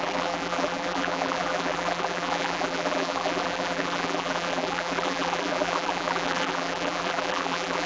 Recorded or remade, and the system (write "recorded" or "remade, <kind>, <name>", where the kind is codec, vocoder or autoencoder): remade, vocoder, BigVGAN v2